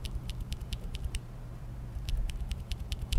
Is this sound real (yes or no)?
no